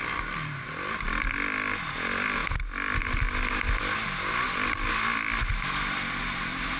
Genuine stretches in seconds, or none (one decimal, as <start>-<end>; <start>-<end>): 0.0-6.8